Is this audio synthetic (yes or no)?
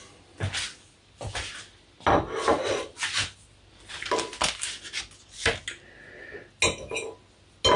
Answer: no